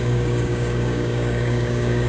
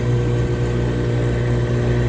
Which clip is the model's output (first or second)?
first